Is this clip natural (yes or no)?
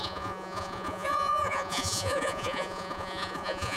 no